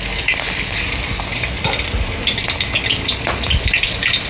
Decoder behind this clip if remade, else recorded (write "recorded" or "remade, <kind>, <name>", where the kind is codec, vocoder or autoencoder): recorded